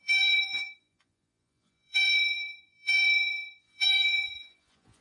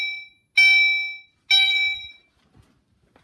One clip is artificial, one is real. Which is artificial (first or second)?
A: first